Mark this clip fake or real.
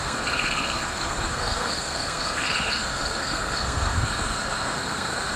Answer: fake